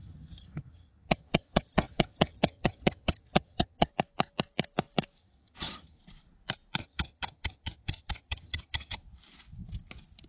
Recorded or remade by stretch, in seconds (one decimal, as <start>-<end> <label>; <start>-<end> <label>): 0.0-3.9 remade; 3.9-5.2 recorded; 5.2-6.0 remade; 6.0-6.8 recorded; 6.8-9.0 remade; 9.0-10.3 recorded